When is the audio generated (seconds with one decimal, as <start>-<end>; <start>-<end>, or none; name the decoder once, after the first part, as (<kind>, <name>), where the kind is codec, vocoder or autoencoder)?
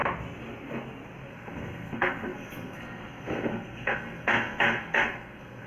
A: 1.3-5.7 (codec, SNAC)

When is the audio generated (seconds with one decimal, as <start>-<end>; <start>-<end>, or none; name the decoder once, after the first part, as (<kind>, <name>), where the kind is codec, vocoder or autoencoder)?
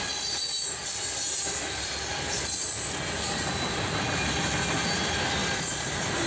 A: none